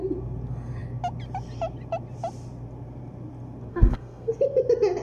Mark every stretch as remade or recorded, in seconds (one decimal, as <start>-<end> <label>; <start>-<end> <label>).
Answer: 0.0-3.7 recorded; 3.7-4.3 remade; 4.3-5.0 recorded